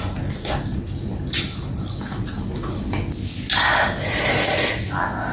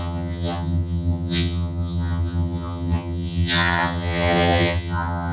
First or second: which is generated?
second